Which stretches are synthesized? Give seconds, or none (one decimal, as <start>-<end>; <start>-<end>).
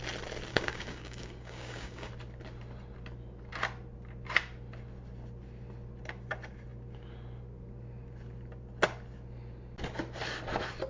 0.5-2.1